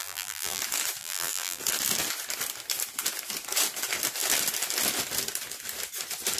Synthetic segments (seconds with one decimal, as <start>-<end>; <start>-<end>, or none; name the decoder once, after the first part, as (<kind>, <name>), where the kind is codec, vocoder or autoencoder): 0.0-0.6 (vocoder, BigVGAN v2); 1.0-1.6